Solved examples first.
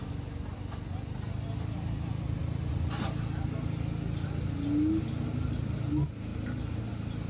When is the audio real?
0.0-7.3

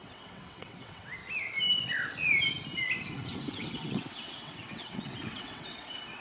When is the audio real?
1.2-3.1

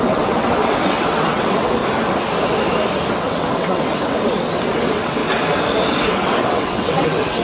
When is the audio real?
1.8-3.1; 5.2-6.1

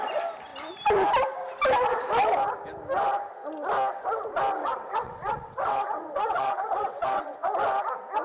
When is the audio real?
0.0-4.6; 7.5-8.2